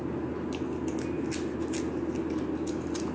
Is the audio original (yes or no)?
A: yes